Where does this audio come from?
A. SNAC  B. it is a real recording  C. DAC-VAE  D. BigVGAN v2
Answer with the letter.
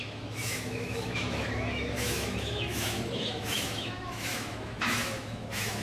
C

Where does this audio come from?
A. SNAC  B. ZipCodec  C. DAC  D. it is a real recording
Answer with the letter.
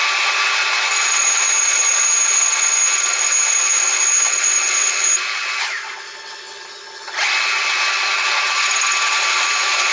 D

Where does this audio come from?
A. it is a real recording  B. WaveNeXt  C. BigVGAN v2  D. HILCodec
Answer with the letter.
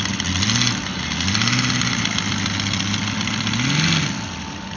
A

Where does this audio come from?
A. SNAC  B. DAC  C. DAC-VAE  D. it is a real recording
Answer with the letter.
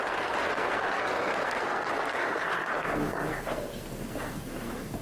A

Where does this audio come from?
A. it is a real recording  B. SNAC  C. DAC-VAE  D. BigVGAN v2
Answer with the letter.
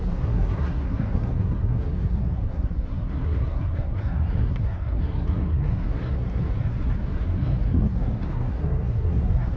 B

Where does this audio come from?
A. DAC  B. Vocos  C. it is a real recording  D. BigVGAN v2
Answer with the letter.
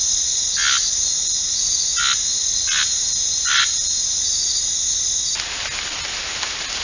C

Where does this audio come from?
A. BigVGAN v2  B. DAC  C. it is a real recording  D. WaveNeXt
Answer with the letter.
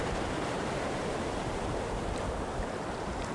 A